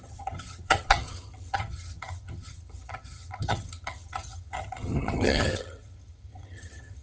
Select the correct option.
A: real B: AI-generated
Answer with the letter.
B